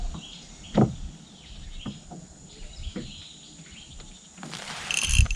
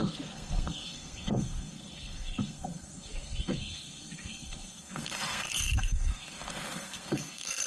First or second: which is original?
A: first